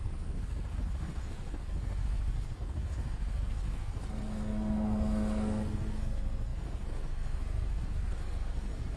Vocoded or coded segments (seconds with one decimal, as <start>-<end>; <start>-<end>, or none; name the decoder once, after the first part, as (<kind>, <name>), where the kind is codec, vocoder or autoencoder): 0.0-9.0 (codec, SNAC)